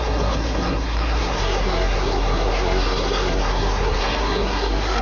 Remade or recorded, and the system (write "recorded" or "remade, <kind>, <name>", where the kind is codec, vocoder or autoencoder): remade, codec, SNAC